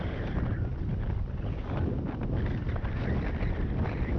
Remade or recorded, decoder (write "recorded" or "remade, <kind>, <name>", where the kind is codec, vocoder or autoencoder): recorded